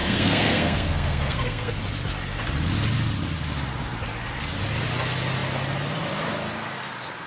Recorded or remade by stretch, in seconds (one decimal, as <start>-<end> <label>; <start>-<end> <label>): 0.0-1.8 remade; 1.8-7.3 recorded